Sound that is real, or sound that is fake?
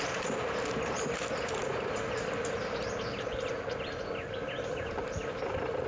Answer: real